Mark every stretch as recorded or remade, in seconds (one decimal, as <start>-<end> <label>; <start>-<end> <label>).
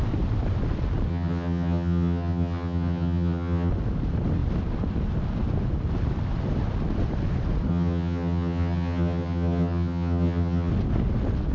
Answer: 0.0-1.1 recorded; 1.1-3.7 remade; 3.7-7.7 recorded; 7.7-10.7 remade; 10.7-11.5 recorded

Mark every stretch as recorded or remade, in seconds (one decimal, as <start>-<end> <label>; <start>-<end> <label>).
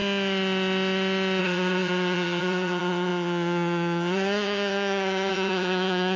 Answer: 0.0-1.4 recorded; 1.4-6.2 remade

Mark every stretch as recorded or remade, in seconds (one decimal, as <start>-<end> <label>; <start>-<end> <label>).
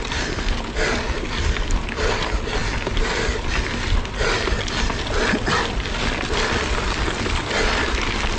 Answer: 0.0-8.4 recorded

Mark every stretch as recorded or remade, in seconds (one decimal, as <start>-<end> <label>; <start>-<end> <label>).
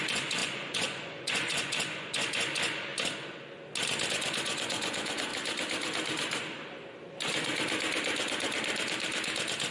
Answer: 0.0-2.9 remade; 2.9-4.1 recorded; 4.1-5.3 remade; 5.3-9.7 recorded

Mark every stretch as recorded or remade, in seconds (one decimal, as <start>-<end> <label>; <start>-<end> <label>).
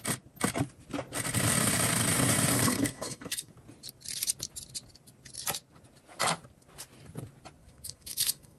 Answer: 0.0-2.5 recorded; 2.5-3.5 remade; 3.5-7.6 recorded; 7.6-8.6 remade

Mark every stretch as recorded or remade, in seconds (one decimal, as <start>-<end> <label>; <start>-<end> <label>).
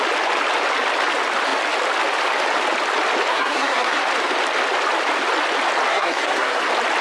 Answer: 0.0-3.3 recorded; 3.3-4.0 remade; 4.0-5.9 recorded; 5.9-6.6 remade; 6.6-7.0 recorded